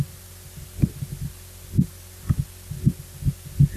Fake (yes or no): no